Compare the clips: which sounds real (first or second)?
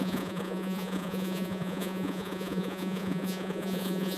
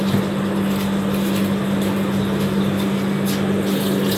second